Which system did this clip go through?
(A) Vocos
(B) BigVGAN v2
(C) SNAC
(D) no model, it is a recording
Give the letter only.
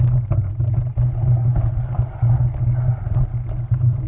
D